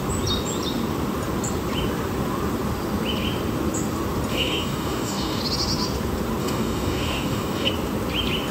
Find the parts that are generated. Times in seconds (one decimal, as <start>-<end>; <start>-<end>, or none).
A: 4.3-5.4; 6.4-7.7